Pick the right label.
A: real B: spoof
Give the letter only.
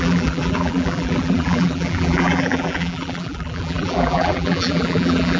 B